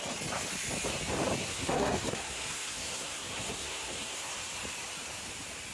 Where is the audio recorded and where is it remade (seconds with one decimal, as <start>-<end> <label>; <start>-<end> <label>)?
0.0-1.4 recorded; 1.4-4.3 remade; 4.3-5.7 recorded